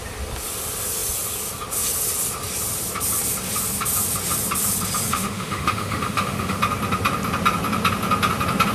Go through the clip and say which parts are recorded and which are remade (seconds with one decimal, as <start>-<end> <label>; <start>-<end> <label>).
0.0-5.1 recorded; 5.1-6.6 remade; 6.6-8.7 recorded